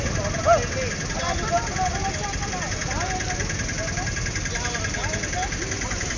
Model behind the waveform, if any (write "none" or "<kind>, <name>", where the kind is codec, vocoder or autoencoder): none